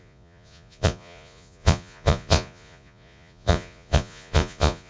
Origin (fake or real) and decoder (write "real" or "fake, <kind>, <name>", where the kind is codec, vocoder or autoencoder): fake, vocoder, Vocos